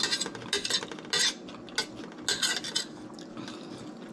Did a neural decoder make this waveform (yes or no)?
no